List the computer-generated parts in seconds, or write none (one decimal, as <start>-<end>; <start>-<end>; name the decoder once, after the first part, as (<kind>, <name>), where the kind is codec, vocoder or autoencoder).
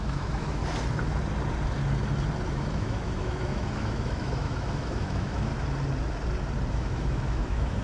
0.0-0.6 (autoencoder, DAC-VAE); 2.5-5.5; 6.7-7.8